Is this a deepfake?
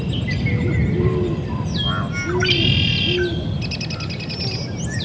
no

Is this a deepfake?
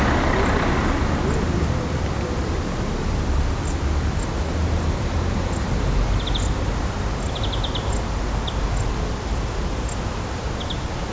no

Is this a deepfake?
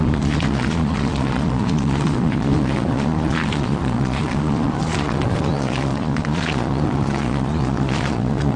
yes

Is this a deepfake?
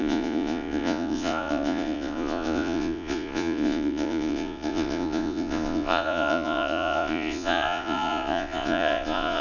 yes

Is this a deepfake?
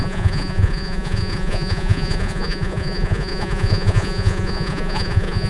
yes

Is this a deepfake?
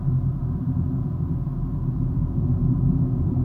yes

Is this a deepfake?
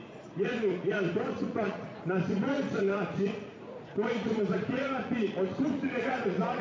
yes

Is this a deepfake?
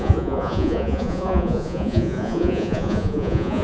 yes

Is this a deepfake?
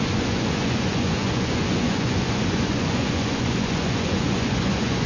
yes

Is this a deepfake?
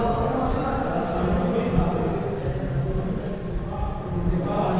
no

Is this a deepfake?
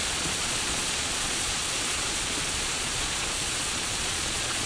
yes